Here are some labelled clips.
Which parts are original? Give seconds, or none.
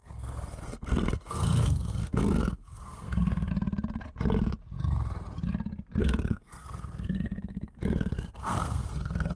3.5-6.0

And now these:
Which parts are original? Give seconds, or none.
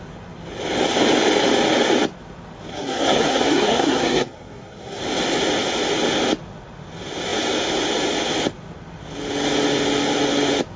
0.0-2.7; 5.0-10.8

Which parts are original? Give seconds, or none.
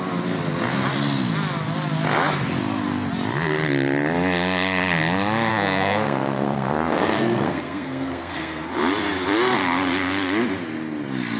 0.0-5.5; 8.7-11.4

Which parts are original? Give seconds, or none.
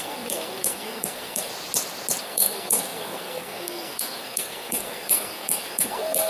1.5-2.2